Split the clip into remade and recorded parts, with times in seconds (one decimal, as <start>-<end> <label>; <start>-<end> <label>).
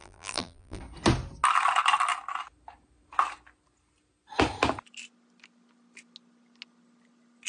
0.0-0.8 remade; 0.8-7.5 recorded